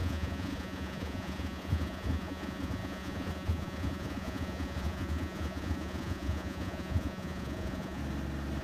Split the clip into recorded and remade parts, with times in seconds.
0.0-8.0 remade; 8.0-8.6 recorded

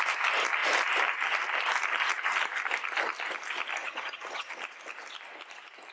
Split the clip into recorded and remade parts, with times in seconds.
0.0-3.8 recorded; 3.8-4.5 remade; 4.5-5.9 recorded

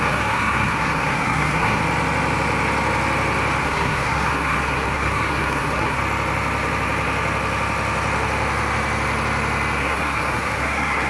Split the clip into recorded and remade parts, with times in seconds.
0.0-1.8 remade; 1.8-3.6 recorded; 3.6-6.0 remade; 6.0-9.8 recorded; 9.8-11.1 remade